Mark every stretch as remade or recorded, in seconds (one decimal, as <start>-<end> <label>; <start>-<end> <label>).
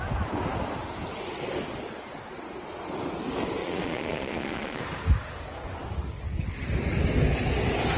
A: 0.0-3.6 recorded; 3.6-4.8 remade; 4.8-8.0 recorded